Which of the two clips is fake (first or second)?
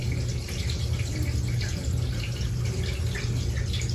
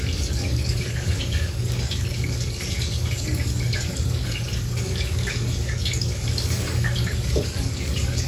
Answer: second